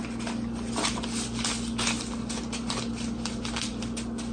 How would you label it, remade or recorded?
recorded